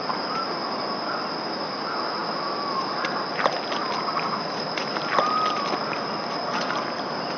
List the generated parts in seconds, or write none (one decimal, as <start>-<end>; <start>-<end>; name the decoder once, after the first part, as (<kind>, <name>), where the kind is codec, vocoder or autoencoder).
none